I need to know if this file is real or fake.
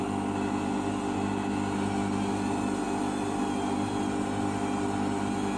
real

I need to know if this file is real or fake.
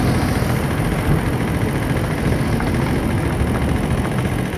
real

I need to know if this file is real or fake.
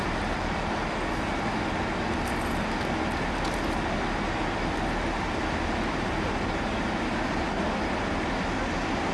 real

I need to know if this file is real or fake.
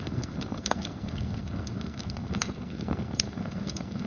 fake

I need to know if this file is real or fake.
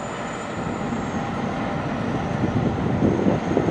real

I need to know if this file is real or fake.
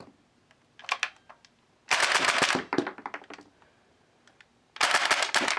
real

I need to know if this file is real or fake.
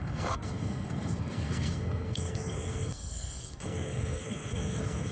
fake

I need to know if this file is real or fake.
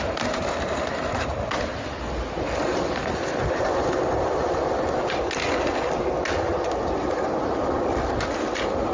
real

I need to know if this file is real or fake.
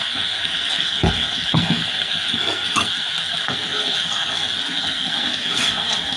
fake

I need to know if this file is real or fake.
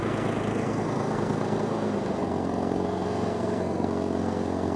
fake